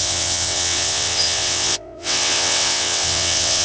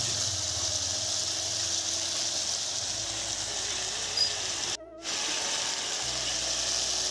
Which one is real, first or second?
second